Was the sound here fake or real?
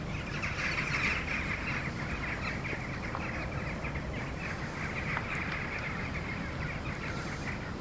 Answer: real